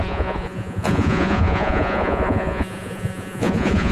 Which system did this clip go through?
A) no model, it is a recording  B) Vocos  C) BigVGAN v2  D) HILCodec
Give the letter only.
B